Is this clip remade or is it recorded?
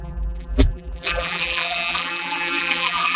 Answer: remade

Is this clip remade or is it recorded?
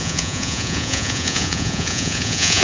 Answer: remade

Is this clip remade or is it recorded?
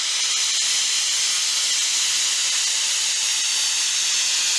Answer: recorded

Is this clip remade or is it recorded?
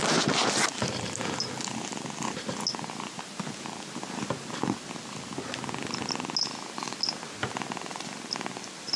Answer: recorded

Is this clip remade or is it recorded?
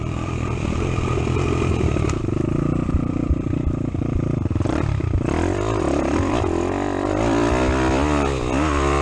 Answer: remade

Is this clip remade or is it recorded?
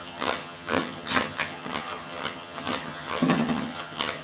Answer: remade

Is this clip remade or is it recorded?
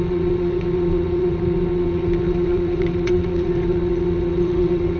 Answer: remade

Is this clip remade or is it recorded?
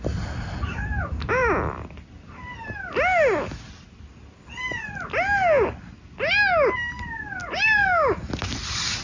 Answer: recorded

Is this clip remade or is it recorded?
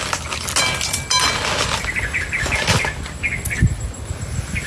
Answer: recorded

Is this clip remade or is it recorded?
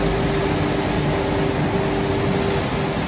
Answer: recorded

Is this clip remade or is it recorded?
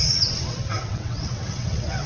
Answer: remade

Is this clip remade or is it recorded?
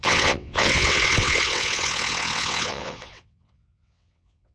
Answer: remade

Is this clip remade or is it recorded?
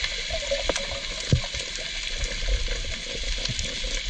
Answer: recorded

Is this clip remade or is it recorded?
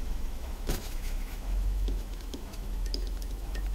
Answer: remade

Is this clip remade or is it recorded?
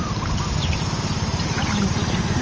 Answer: recorded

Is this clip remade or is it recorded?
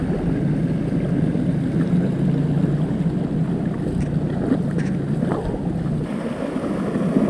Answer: recorded